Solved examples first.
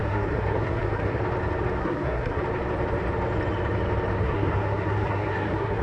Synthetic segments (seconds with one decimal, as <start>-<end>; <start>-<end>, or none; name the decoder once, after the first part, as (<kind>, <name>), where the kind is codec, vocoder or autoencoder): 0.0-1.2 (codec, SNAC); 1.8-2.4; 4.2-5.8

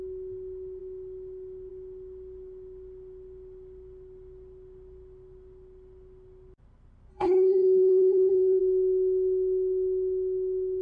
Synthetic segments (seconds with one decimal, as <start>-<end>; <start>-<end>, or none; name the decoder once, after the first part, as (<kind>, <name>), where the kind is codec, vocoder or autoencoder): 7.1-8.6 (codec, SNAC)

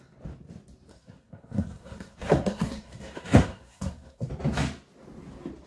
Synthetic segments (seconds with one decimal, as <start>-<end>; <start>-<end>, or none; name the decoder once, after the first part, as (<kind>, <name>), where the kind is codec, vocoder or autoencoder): 0.9-4.3 (codec, SNAC)

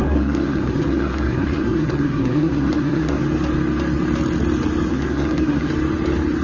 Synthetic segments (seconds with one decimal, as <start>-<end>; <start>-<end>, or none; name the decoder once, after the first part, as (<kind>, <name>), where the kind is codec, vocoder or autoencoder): 0.0-3.2 (codec, SNAC); 4.9-5.7